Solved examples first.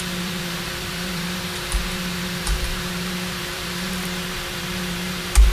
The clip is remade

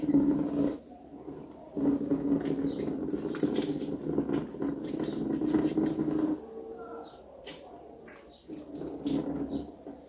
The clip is recorded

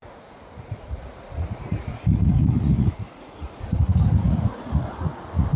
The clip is remade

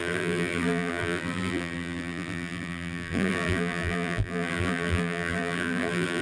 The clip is remade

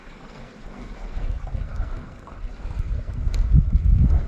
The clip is remade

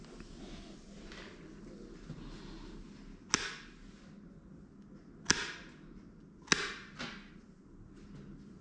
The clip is recorded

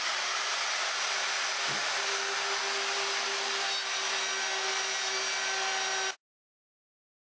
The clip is recorded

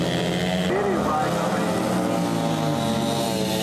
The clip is recorded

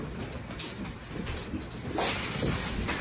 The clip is recorded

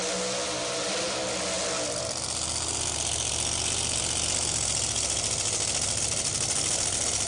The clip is recorded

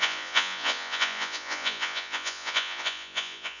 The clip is remade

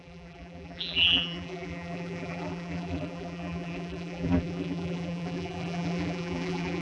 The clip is remade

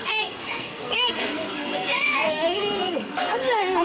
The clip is remade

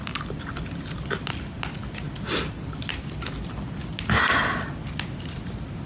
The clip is recorded